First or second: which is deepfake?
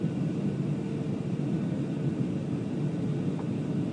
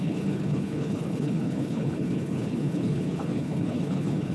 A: second